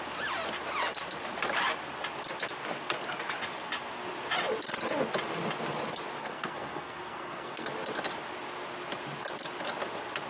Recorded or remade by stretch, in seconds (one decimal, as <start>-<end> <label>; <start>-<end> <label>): 0.0-6.2 recorded; 6.2-7.7 remade; 7.7-10.3 recorded